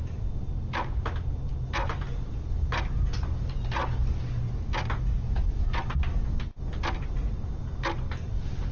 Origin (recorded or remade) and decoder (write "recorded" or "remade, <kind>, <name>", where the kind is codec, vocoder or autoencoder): recorded